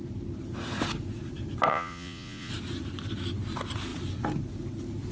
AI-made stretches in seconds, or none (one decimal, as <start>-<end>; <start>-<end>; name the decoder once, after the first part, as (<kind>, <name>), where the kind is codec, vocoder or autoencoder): 1.7-2.5 (vocoder, Vocos)